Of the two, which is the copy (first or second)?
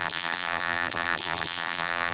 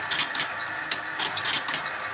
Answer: first